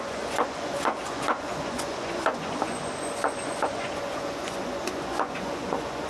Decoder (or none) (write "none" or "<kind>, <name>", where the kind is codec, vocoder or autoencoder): vocoder, Vocos